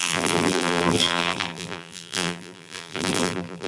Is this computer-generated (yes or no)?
yes